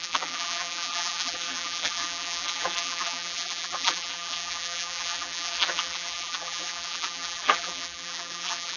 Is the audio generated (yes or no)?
yes